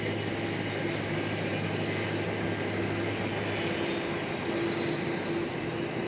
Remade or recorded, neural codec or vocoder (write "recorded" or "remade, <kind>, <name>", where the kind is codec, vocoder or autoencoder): recorded